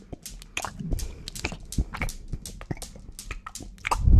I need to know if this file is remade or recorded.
recorded